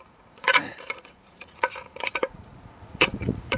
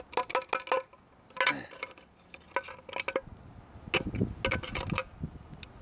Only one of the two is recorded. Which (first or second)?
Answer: second